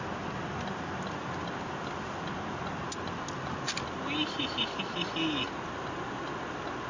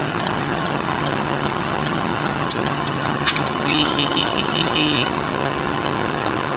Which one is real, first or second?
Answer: first